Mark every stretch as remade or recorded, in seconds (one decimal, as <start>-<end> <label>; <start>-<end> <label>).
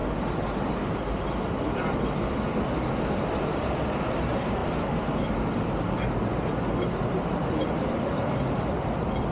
0.0-4.6 recorded; 4.6-8.4 remade; 8.4-9.3 recorded